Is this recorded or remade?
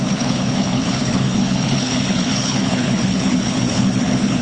remade